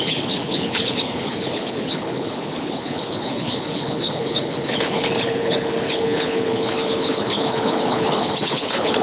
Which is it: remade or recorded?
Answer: remade